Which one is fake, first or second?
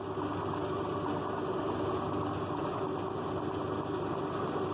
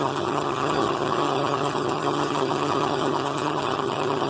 second